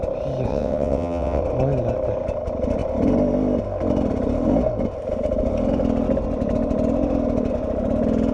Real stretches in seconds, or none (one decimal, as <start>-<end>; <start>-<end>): 0.0-0.5; 1.4-8.3